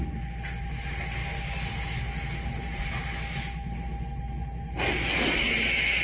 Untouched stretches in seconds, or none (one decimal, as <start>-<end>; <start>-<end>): 0.0-6.0